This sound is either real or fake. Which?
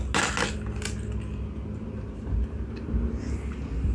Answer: real